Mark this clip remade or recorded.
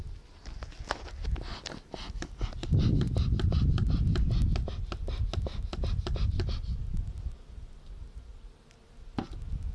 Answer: recorded